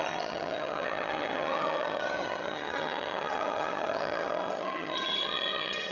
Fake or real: fake